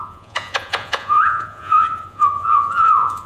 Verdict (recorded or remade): remade